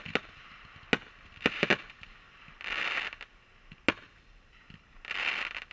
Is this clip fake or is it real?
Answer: real